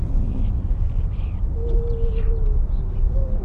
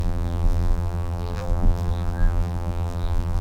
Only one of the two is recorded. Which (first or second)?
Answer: first